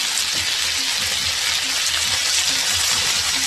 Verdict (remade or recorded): recorded